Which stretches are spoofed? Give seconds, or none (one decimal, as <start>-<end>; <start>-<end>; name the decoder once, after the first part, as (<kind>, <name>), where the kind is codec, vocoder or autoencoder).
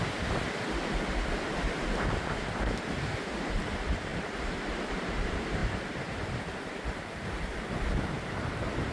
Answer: 0.0-4.1 (vocoder, BigVGAN v2); 4.9-8.9